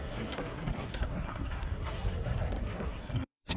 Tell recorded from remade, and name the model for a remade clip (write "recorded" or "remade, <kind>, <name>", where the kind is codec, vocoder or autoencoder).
remade, codec, SNAC